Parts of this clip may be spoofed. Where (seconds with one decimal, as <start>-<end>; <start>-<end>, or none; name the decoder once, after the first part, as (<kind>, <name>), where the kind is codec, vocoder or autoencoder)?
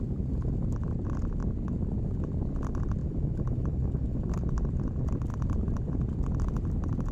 3.0-4.3 (autoencoder, DAC-VAE)